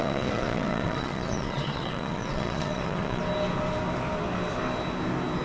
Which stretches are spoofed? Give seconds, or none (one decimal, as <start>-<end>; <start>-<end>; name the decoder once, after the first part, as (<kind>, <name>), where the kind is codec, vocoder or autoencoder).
0.0-3.2 (vocoder, Vocos)